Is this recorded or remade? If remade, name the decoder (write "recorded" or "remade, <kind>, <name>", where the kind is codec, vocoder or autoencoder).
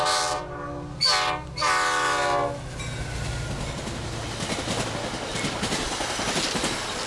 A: recorded